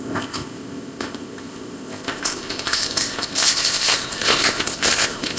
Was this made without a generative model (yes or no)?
no